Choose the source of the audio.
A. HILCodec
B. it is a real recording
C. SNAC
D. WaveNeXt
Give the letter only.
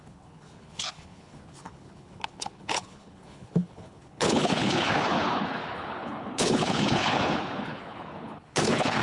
A